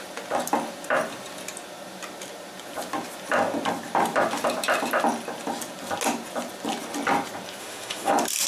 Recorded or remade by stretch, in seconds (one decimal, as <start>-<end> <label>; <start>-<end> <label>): 0.0-7.6 recorded; 7.6-8.1 remade; 8.1-8.5 recorded